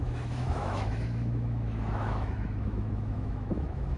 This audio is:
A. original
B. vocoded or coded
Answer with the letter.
B